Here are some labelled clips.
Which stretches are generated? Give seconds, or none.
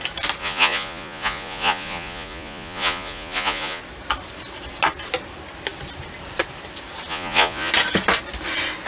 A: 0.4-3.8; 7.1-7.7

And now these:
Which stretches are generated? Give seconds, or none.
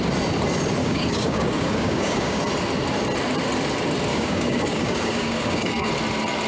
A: 0.8-2.4; 4.1-5.9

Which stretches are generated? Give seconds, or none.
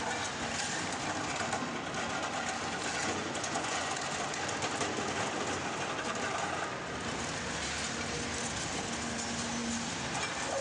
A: 3.0-3.9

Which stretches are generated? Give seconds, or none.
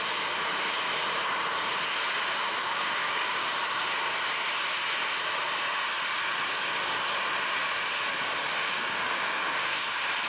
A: 3.0-3.5; 8.5-9.8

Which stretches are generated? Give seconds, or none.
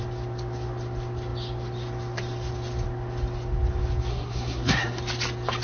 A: 4.1-5.0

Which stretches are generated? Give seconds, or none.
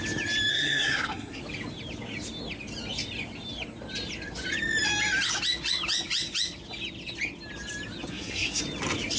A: 0.5-1.4; 8.1-8.6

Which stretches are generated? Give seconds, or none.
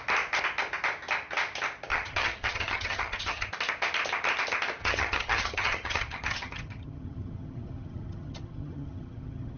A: 1.9-3.5; 4.8-9.6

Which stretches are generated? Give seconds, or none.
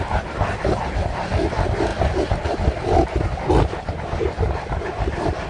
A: none